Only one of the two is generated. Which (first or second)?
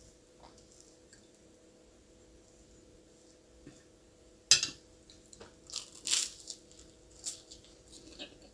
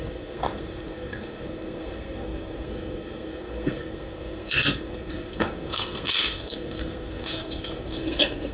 second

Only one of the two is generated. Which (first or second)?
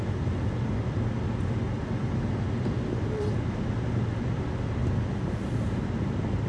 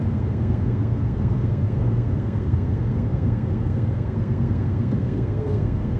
second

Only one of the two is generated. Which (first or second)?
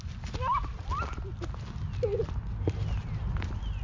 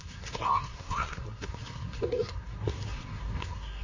second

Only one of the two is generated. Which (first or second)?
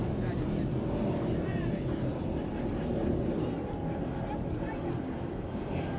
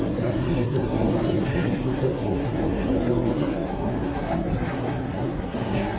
second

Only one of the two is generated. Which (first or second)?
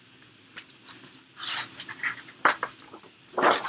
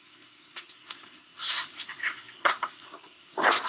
second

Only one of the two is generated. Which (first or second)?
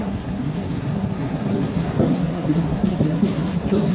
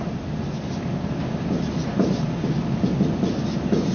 first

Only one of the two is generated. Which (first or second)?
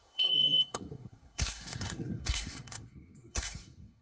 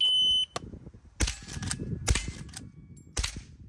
first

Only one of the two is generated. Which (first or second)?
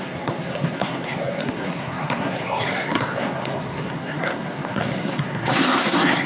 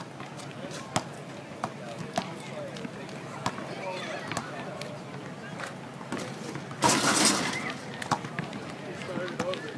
first